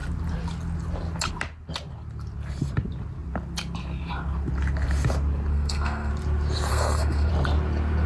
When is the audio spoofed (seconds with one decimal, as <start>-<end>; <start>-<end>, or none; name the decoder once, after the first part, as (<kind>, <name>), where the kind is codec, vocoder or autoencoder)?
5.5-6.1 (codec, SNAC); 6.7-7.3

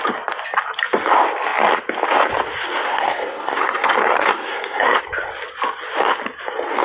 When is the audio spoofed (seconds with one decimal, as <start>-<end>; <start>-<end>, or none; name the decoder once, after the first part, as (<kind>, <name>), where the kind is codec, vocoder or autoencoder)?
2.9-5.0 (codec, SNAC)

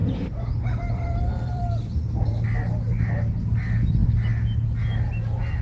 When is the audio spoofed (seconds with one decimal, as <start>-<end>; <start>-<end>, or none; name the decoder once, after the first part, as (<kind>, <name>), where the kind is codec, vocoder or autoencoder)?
0.0-1.6 (vocoder, BigVGAN v2)

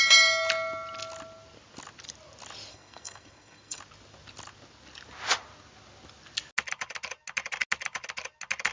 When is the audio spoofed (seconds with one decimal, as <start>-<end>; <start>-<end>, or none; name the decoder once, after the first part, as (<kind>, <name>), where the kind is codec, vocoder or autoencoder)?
2.7-3.8 (codec, SNAC)